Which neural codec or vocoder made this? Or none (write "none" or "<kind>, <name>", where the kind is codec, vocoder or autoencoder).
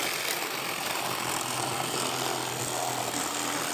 none